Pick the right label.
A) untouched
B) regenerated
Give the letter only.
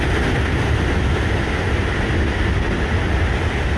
A